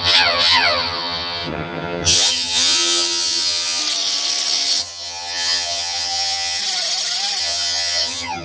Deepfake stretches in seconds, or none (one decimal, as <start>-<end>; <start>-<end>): 0.0-3.8; 4.8-6.6; 7.4-8.4